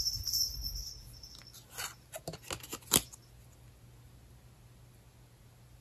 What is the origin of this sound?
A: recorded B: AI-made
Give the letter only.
A